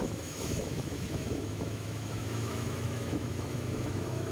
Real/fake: fake